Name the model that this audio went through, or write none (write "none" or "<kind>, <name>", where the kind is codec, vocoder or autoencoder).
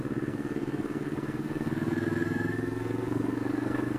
codec, SNAC